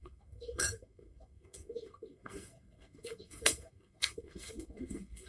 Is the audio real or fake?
fake